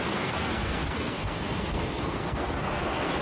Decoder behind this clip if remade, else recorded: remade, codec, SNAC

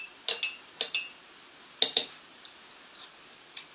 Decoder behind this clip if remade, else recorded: recorded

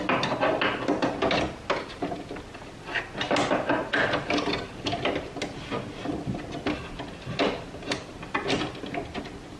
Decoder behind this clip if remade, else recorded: recorded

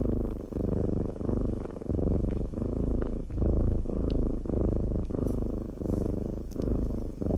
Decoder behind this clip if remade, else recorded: remade, codec, DAC